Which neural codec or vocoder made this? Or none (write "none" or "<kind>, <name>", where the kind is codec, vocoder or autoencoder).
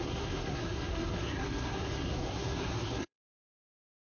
codec, SNAC